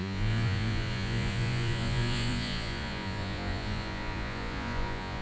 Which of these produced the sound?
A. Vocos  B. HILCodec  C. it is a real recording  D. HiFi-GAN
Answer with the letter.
A